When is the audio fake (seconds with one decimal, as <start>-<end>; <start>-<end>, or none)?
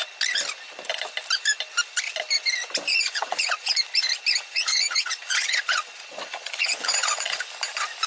2.9-3.7; 4.5-7.4